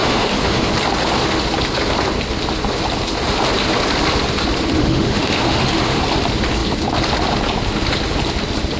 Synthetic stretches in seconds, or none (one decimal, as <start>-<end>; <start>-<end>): 0.0-0.7; 4.8-6.0